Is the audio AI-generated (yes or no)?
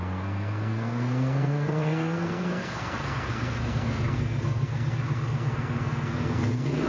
yes